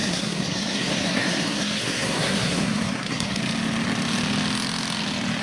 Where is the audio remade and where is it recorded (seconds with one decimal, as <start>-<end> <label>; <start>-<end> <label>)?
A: 0.0-3.4 remade; 3.4-5.4 recorded